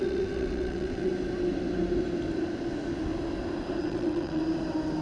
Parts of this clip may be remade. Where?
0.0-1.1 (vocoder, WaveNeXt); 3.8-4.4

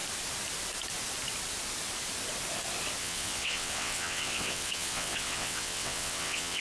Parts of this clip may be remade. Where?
3.0-6.6 (vocoder, WaveNeXt)

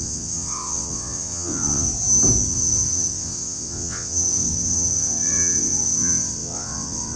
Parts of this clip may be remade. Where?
0.0-1.9 (vocoder, WaveNeXt); 2.5-7.2

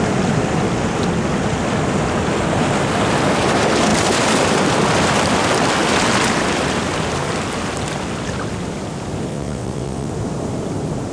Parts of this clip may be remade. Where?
9.3-10.1 (vocoder, WaveNeXt)

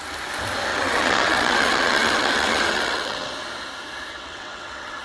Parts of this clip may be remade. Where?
0.7-3.3 (vocoder, WaveNeXt); 4.1-5.0

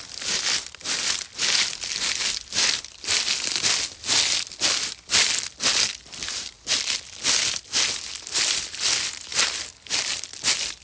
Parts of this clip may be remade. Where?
none